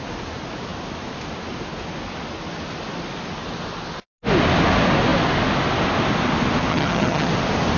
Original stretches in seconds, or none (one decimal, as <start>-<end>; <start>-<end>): 0.0-6.7; 7.3-7.8